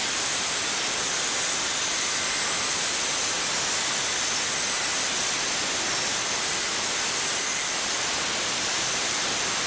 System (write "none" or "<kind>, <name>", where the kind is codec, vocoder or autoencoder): none